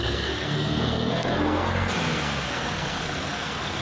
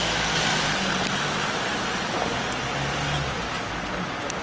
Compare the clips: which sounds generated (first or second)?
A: first